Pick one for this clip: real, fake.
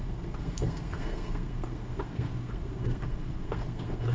fake